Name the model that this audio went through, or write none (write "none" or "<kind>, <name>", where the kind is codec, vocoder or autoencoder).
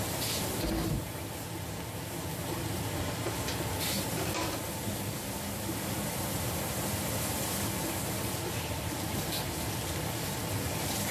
none